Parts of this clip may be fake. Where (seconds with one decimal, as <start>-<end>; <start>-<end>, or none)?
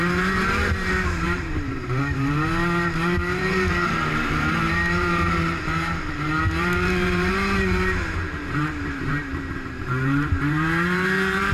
0.0-9.3; 9.8-11.5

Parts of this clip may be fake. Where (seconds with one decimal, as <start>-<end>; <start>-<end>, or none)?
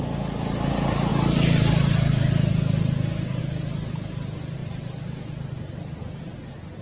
1.1-3.4; 4.6-6.0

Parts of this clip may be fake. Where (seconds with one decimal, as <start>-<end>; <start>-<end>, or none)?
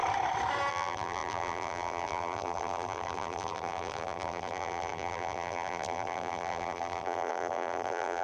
0.7-8.2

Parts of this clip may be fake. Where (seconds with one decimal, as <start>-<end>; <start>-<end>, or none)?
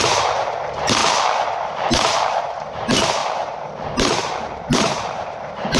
0.0-1.0; 2.1-5.8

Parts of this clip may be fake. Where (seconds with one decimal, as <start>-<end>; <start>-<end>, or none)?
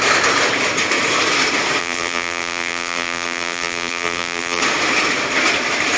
1.8-4.6